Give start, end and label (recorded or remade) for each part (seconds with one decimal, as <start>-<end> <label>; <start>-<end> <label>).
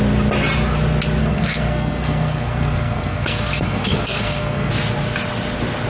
0.0-1.2 recorded; 1.2-4.7 remade; 4.7-5.9 recorded